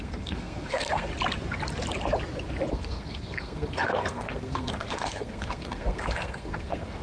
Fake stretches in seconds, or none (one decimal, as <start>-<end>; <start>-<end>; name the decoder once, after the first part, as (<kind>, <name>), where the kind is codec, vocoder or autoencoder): 0.0-1.1 (codec, SNAC); 2.7-7.0